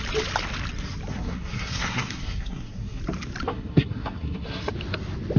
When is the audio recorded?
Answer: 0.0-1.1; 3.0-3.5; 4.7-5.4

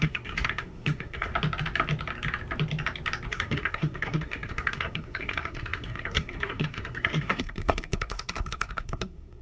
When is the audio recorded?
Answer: 1.3-3.3

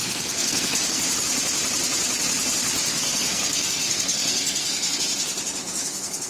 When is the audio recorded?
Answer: 1.0-2.9; 5.0-5.6

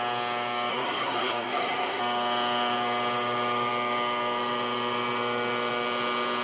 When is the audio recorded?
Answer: 0.0-0.7; 2.0-6.4